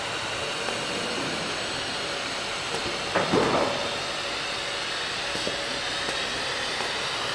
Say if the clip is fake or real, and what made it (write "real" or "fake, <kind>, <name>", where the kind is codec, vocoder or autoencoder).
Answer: real